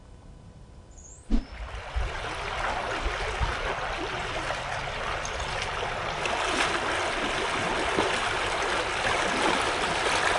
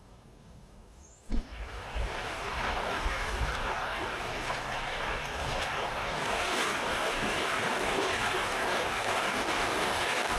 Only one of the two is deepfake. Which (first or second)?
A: second